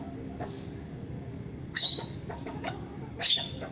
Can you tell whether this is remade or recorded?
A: remade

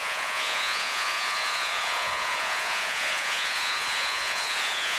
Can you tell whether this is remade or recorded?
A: remade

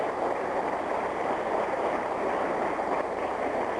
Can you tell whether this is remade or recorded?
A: recorded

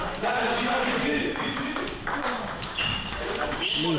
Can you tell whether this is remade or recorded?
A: remade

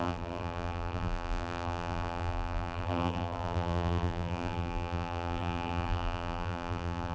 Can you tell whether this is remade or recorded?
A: remade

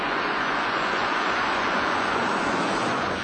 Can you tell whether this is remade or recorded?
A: remade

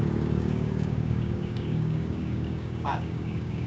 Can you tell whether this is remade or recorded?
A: remade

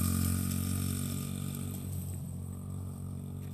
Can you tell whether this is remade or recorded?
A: recorded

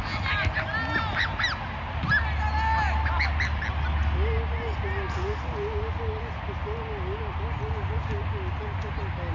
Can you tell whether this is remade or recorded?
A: recorded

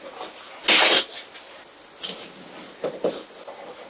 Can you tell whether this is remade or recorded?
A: recorded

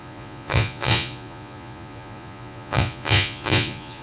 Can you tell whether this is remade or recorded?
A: remade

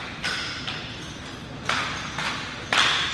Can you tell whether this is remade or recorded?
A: recorded